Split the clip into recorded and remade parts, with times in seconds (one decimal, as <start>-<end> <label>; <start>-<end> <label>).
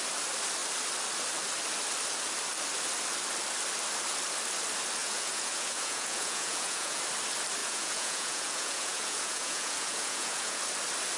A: 0.0-5.0 recorded; 5.0-7.0 remade; 7.0-7.6 recorded; 7.6-10.6 remade; 10.6-11.2 recorded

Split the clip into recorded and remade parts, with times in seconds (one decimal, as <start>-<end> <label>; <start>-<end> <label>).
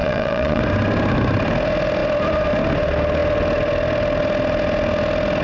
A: 0.0-0.6 remade; 0.6-5.4 recorded